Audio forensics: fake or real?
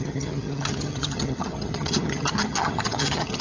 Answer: fake